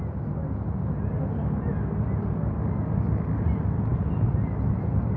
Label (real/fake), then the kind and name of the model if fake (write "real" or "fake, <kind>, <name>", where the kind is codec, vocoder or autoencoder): real